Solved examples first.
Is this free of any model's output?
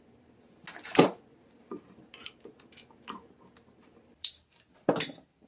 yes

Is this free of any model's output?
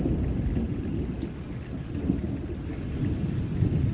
yes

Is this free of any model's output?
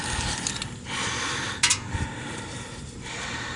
yes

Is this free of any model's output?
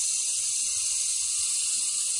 yes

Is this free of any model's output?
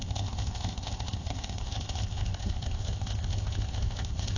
no